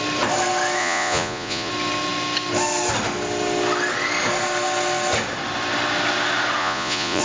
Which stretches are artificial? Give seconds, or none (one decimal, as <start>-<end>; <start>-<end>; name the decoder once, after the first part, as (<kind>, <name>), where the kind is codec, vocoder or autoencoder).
0.8-1.7 (vocoder, Vocos); 6.6-7.2